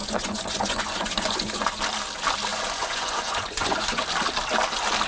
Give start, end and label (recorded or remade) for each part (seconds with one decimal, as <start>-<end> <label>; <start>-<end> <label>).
0.0-1.8 remade; 1.8-2.5 recorded; 2.5-4.0 remade; 4.0-5.1 recorded